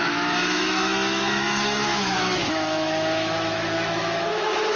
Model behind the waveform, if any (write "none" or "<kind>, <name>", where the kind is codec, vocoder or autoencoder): autoencoder, DAC-VAE